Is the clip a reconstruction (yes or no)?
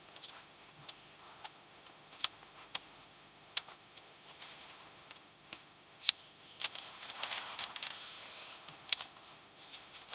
yes